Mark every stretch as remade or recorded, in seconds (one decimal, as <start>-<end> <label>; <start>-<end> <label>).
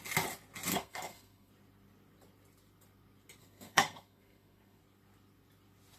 0.0-0.7 recorded; 0.7-1.5 remade; 1.5-3.4 recorded; 3.4-4.8 remade; 4.8-6.0 recorded